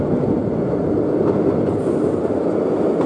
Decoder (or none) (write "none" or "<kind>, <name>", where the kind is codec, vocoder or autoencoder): none